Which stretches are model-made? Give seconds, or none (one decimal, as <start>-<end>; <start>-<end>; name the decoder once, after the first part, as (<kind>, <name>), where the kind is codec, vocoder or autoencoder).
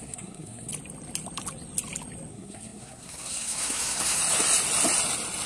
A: 0.0-0.7 (codec, SNAC); 2.3-4.2